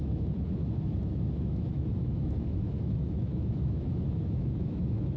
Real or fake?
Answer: fake